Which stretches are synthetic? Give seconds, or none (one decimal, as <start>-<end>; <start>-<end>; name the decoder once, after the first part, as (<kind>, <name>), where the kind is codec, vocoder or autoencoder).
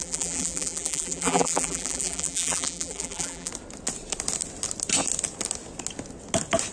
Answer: 0.0-3.5 (vocoder, BigVGAN v2)